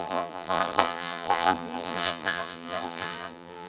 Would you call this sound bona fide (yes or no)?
no